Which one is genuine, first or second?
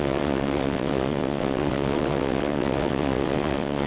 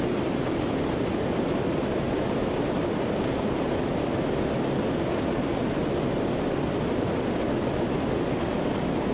second